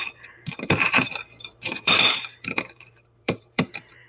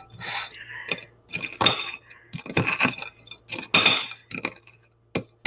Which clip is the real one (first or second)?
second